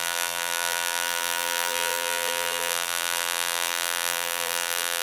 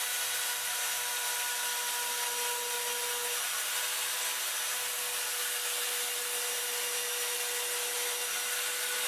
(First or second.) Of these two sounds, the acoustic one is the second